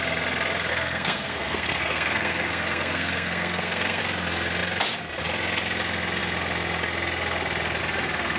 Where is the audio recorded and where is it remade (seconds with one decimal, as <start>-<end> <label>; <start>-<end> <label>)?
0.0-0.7 recorded; 0.7-4.0 remade; 4.0-8.4 recorded